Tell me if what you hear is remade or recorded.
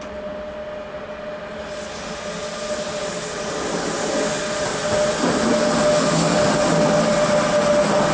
recorded